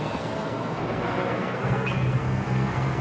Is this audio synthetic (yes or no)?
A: yes